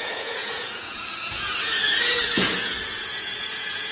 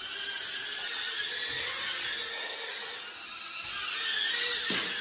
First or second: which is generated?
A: first